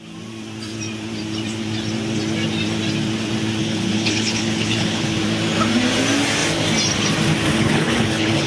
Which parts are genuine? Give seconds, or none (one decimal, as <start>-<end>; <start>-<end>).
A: 0.0-3.6; 5.2-7.5